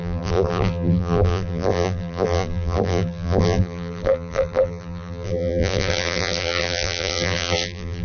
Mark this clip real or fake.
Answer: fake